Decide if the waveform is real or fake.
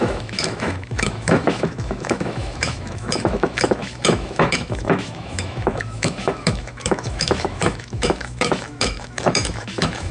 fake